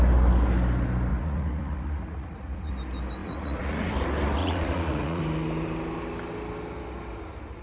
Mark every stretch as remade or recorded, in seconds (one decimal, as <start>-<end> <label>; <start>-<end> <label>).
0.0-1.1 recorded; 1.1-2.7 remade; 2.7-3.2 recorded; 3.2-3.9 remade; 3.9-4.4 recorded; 4.4-5.2 remade; 5.2-7.6 recorded